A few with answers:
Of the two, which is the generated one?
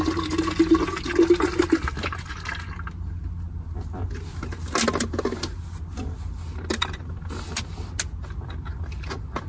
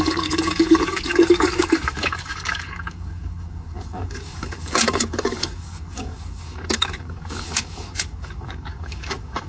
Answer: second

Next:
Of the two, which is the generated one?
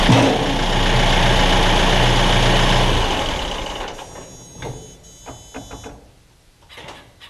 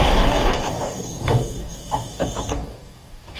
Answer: second